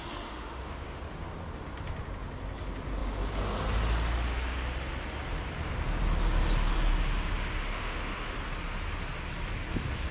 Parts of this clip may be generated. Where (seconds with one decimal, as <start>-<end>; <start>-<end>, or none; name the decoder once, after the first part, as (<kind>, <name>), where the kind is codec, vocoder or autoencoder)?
0.0-1.0 (autoencoder, DAC-VAE); 7.6-8.4